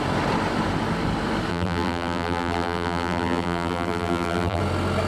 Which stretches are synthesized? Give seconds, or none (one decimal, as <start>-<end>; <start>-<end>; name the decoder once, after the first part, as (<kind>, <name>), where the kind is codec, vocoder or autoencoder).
1.5-4.6 (vocoder, BigVGAN v2)